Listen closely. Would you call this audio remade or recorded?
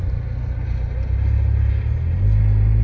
recorded